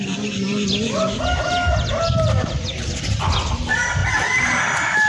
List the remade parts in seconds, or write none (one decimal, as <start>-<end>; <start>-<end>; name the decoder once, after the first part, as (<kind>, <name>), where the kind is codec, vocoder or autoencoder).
0.0-0.5 (vocoder, BigVGAN v2); 3.6-5.1